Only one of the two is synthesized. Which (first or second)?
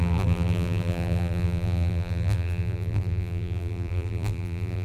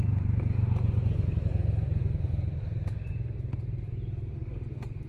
first